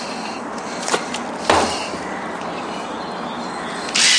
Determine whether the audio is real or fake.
real